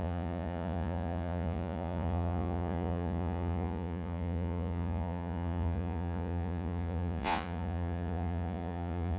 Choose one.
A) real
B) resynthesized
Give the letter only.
B